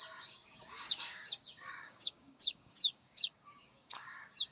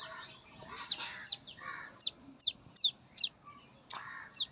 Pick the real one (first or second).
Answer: second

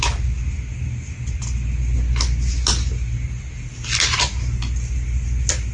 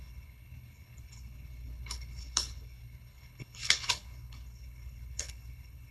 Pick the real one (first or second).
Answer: first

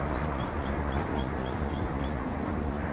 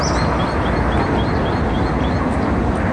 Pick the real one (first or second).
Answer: second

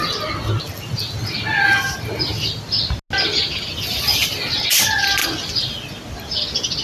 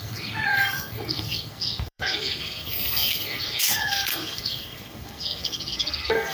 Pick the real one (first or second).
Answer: first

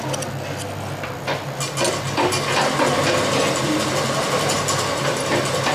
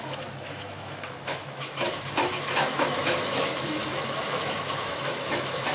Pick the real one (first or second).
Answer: first